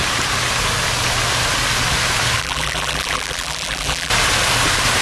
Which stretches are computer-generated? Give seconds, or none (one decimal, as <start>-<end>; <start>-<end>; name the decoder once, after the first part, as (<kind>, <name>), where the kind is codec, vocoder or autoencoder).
2.4-4.1 (vocoder, BigVGAN v2)